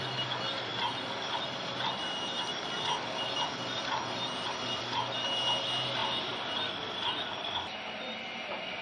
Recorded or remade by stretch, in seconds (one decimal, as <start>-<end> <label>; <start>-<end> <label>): 0.0-8.8 recorded